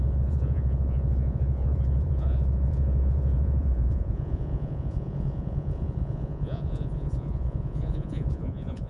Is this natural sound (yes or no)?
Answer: no